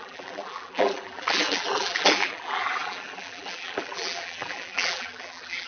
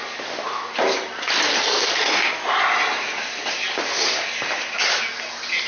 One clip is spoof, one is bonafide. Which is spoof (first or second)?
first